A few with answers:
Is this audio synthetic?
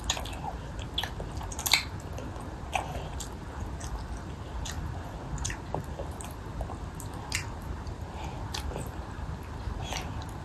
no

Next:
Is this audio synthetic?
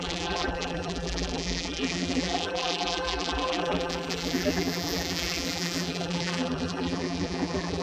yes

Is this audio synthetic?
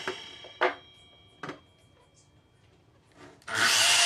no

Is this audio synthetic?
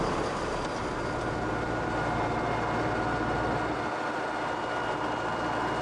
no